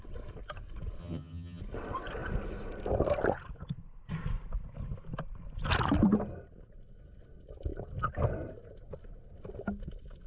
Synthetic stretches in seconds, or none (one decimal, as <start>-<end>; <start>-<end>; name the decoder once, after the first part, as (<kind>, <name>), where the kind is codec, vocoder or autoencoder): 1.0-1.6 (vocoder, HiFi-GAN)